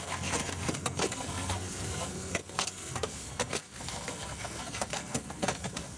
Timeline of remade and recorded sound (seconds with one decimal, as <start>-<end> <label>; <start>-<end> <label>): 0.0-6.0 remade